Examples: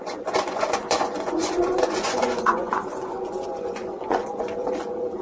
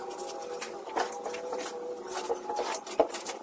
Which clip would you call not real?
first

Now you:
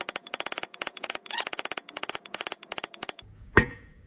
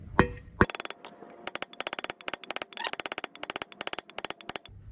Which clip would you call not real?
first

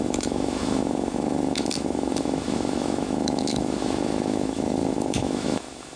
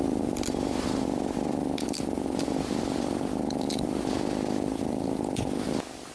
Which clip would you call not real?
first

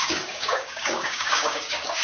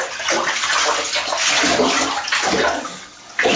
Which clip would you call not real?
first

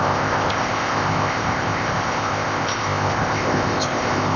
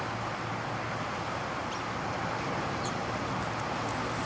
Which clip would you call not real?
first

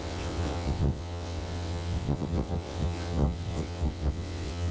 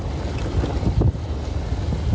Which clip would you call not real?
first